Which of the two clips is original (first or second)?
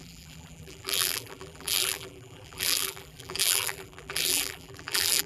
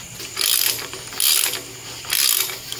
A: second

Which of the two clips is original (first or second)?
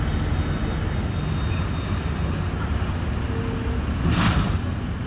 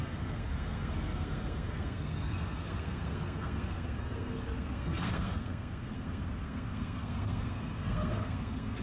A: first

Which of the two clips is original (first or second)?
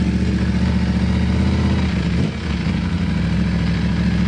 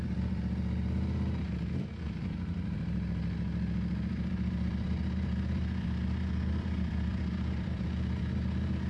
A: first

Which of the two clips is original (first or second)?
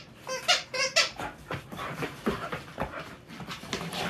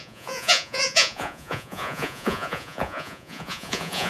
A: first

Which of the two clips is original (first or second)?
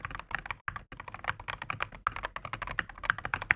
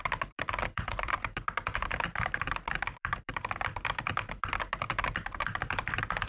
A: first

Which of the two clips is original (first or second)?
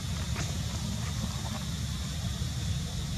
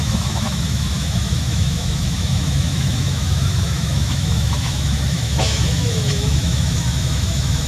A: first